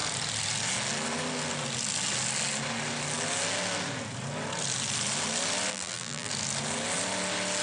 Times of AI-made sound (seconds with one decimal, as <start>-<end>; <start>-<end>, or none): 5.7-6.3